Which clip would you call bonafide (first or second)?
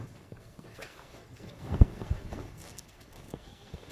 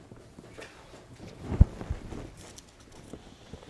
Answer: second